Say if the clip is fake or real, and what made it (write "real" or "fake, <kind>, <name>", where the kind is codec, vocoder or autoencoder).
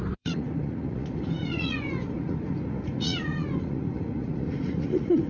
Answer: fake, vocoder, Vocos